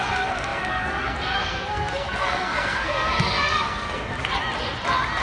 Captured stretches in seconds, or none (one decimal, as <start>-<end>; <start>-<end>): 4.1-5.2